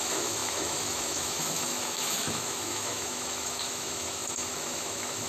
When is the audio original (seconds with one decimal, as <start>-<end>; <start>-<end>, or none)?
none